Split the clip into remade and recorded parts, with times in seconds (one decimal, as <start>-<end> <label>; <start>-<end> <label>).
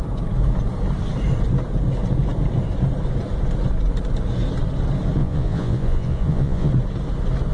0.0-5.2 recorded; 5.2-6.7 remade; 6.7-7.5 recorded